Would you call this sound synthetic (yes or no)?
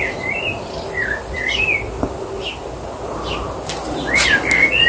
no